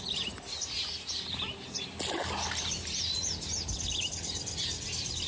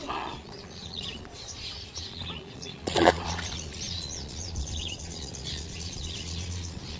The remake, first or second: second